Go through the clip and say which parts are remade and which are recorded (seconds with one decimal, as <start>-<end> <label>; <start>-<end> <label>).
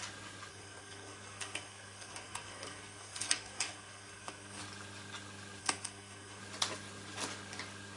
0.0-0.5 recorded; 0.5-4.6 remade; 4.6-5.6 recorded; 5.6-6.4 remade; 6.4-8.0 recorded